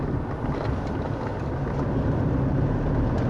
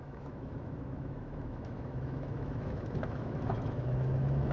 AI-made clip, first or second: second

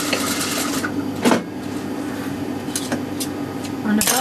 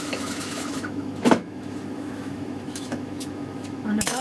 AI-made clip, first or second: second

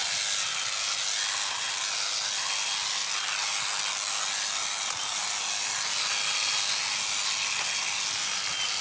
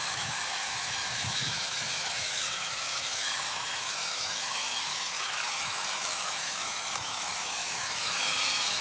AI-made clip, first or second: second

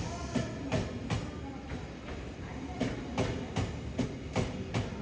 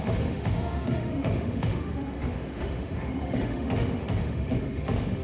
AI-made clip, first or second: second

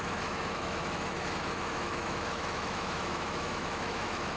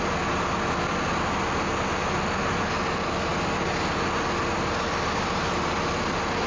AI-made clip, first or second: first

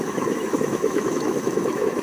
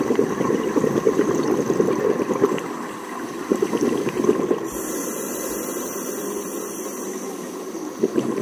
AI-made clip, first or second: first